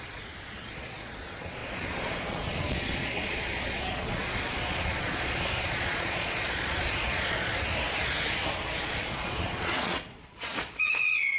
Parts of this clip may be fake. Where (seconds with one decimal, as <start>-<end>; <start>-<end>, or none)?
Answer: 0.0-7.5; 8.8-11.4